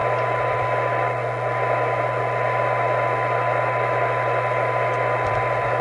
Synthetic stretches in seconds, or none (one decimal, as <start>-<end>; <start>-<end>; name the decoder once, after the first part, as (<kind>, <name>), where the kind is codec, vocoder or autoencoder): none